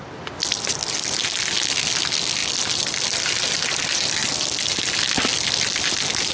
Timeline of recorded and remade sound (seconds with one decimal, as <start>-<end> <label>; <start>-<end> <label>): 0.0-6.3 recorded